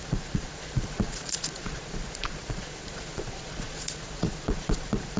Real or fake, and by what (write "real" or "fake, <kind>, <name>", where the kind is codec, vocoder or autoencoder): fake, vocoder, Vocos